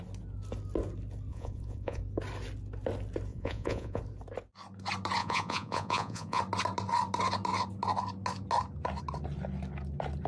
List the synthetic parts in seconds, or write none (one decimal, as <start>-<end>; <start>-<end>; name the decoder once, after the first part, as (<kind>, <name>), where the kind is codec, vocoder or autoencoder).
1.3-2.0 (vocoder, Vocos); 3.3-4.0; 5.2-6.4